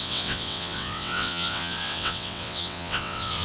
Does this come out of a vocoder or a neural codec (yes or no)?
yes